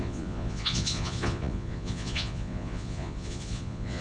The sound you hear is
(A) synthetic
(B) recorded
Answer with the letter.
A